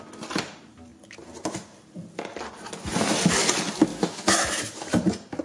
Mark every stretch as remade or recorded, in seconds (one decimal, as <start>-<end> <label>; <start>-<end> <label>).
0.0-3.9 recorded; 3.9-4.6 remade; 4.6-5.4 recorded